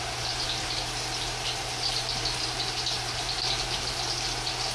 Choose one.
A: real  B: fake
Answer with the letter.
A